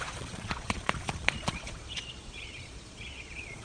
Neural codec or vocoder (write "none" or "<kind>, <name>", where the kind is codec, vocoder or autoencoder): vocoder, Vocos